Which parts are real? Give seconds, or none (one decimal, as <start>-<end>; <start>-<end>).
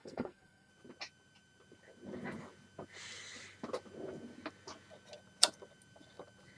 0.7-6.6